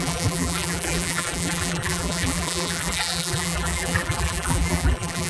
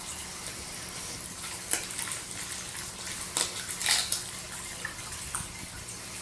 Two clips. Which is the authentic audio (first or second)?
second